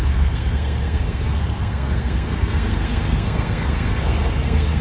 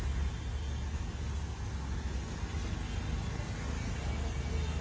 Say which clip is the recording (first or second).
second